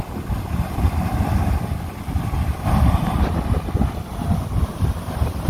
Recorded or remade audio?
recorded